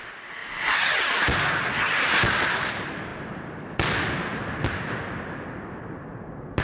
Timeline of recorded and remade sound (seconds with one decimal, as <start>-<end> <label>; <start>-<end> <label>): 0.0-6.6 recorded